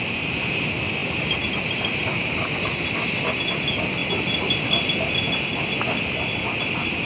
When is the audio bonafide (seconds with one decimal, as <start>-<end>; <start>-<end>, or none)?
0.0-4.0; 5.2-7.1